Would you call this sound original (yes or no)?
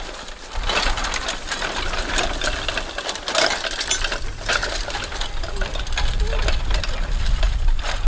yes